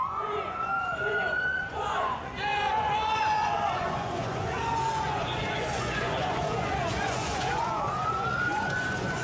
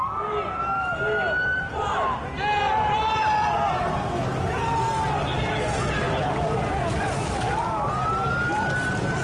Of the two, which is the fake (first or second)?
first